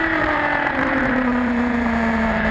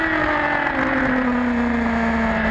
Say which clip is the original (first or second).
second